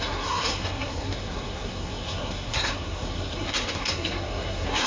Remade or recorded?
remade